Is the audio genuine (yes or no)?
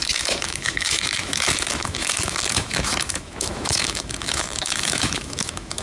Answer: no